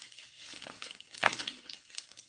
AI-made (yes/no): yes